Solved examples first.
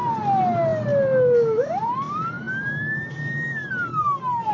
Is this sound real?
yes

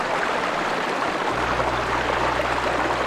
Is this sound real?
yes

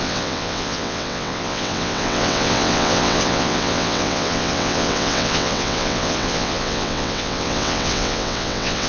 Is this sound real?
no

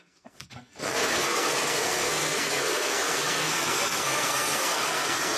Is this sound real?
no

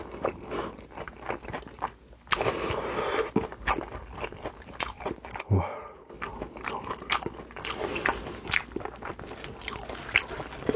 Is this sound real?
yes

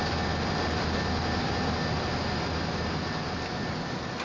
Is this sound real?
yes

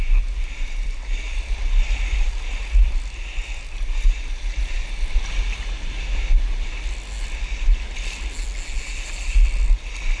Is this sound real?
yes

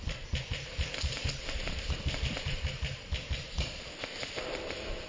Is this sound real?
yes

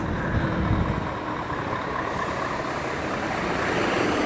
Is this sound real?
yes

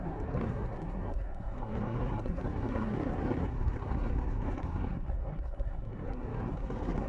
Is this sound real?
no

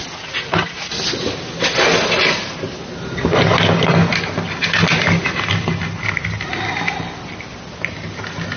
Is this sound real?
yes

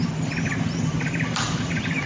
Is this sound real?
yes